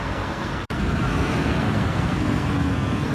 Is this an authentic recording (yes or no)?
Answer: no